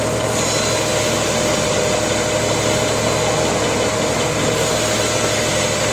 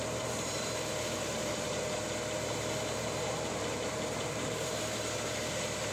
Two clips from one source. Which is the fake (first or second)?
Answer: second